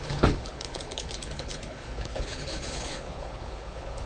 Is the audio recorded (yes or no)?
no